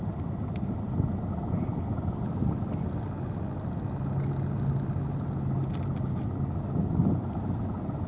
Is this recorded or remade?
recorded